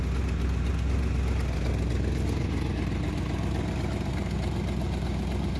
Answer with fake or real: real